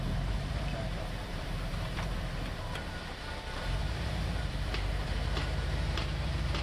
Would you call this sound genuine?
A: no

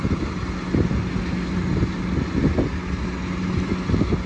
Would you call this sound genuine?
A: yes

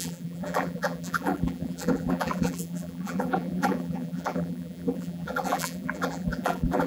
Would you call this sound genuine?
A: no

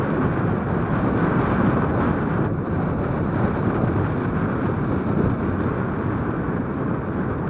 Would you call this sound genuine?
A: yes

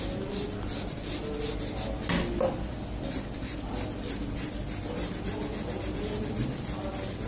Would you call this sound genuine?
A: yes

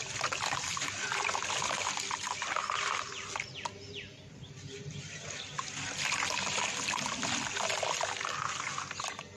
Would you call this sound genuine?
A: yes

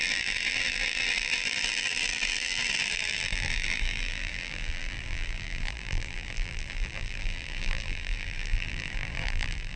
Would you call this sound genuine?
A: no